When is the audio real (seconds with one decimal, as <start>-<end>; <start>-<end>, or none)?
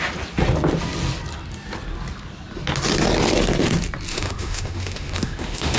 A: 0.0-4.1